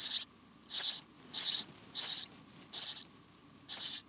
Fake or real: real